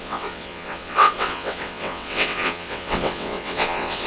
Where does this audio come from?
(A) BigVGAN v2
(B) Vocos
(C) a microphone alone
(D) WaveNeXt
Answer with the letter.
D